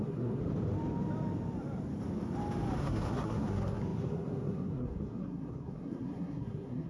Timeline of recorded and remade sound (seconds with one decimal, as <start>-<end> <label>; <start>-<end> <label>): 0.0-0.4 remade; 0.4-2.8 recorded; 2.8-6.9 remade